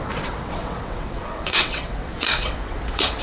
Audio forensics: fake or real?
fake